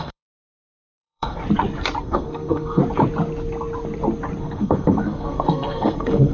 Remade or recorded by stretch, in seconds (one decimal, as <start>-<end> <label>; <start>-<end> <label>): 0.0-1.4 remade; 1.4-2.0 recorded; 2.0-2.8 remade; 2.8-4.4 recorded; 4.4-6.3 remade